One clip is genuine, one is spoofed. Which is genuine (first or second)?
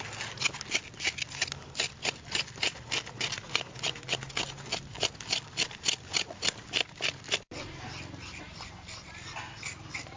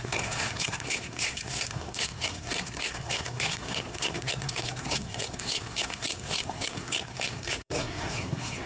first